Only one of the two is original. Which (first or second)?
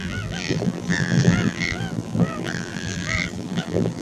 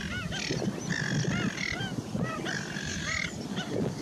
second